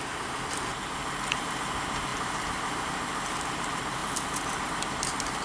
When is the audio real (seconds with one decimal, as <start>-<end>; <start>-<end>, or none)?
0.7-1.2